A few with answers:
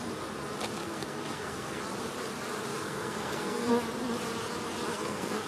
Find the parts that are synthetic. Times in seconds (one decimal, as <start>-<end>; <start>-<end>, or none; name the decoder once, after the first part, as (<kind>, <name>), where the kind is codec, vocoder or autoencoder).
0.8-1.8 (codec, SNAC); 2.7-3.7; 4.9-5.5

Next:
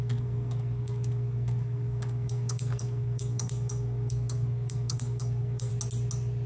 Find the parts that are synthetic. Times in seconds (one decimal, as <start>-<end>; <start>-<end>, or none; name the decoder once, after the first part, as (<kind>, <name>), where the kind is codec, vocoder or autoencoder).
0.0-5.7 (codec, SNAC)

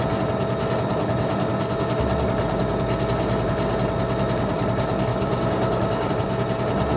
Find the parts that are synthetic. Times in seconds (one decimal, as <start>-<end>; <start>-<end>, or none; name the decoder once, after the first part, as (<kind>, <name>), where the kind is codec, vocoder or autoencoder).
5.1-6.1 (codec, DAC)

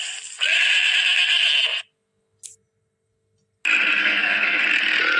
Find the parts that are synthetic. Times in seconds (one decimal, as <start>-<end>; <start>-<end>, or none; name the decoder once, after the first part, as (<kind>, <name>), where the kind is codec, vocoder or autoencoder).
4.0-4.6 (codec, SNAC)

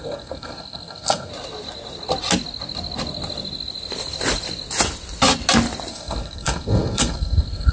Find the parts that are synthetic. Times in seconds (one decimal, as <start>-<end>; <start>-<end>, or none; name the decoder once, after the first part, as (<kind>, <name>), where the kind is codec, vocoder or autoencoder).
0.0-1.3 (codec, SNAC); 5.9-7.7

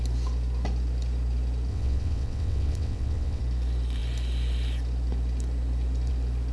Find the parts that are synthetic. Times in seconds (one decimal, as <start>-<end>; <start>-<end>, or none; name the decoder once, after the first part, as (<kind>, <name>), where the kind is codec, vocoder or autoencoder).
1.7-3.4 (vocoder, WaveNeXt)